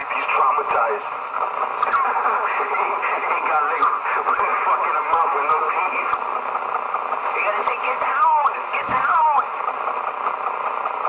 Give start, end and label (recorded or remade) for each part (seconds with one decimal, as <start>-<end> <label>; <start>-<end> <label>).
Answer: 0.0-11.1 recorded